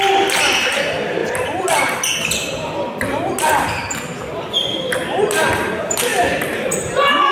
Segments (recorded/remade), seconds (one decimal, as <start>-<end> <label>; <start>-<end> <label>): 0.0-7.3 recorded

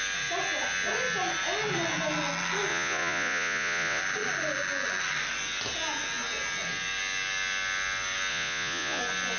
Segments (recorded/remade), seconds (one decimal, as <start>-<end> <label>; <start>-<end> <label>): 0.0-2.7 recorded; 2.7-4.0 remade; 4.0-8.3 recorded; 8.3-9.0 remade; 9.0-9.4 recorded

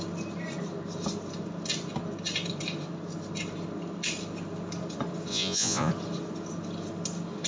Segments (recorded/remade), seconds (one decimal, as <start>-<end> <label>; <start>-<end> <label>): 0.0-5.3 recorded; 5.3-5.9 remade; 5.9-7.5 recorded

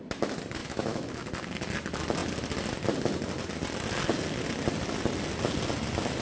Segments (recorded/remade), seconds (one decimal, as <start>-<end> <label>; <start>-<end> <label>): 0.0-0.6 recorded; 0.6-1.3 remade; 1.3-6.2 recorded

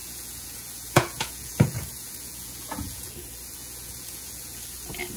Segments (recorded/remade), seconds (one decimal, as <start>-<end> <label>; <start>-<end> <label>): 0.0-3.1 remade; 3.1-3.6 recorded; 3.6-4.6 remade; 4.6-5.2 recorded

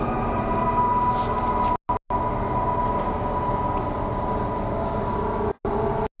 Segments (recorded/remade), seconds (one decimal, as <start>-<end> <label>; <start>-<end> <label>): 0.0-6.2 recorded